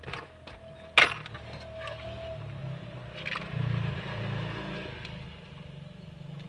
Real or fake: real